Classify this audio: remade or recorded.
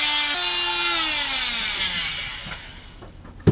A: recorded